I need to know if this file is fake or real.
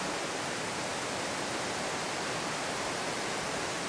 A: real